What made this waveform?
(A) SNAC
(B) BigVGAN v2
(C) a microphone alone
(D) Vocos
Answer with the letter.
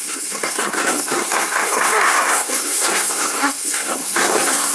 A